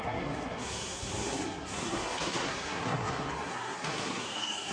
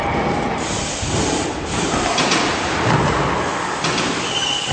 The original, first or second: second